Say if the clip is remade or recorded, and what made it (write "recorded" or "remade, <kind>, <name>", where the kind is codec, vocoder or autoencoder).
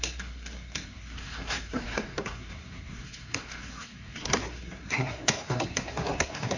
remade, codec, SNAC